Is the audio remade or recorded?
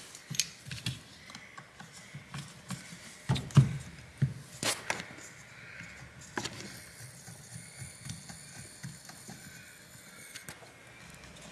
recorded